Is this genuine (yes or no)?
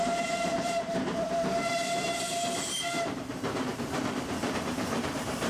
no